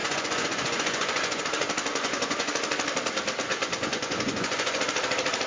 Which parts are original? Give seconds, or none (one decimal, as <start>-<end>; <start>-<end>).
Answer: 1.4-1.9; 2.5-3.5; 4.8-5.5